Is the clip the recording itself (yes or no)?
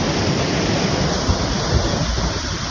yes